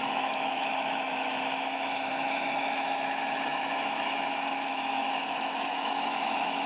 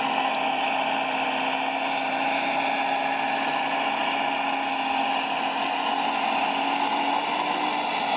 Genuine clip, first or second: second